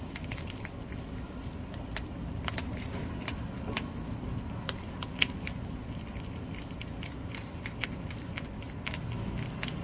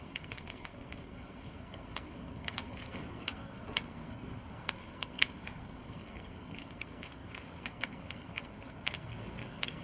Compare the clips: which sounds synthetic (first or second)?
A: second